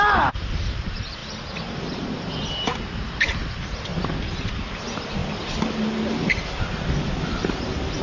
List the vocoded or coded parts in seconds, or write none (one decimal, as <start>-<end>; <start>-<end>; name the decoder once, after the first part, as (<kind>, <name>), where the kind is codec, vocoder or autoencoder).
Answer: none